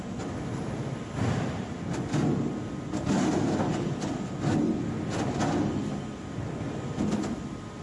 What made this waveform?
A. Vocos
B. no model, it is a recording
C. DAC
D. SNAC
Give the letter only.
B